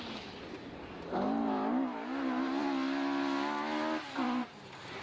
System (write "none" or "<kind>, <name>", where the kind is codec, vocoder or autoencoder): none